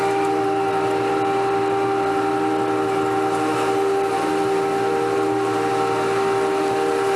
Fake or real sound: real